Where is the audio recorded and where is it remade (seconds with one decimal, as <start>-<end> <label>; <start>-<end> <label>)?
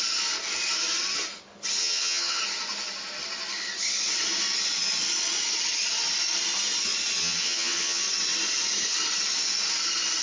0.0-1.8 recorded; 1.8-2.4 remade; 2.4-7.2 recorded; 7.2-8.0 remade; 8.0-10.2 recorded